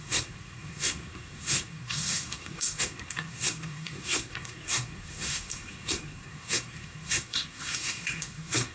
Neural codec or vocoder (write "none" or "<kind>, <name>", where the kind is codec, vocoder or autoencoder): codec, SNAC